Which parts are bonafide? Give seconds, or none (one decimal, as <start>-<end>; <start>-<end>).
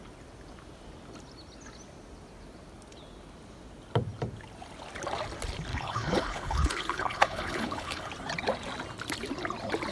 0.0-5.7; 8.1-9.9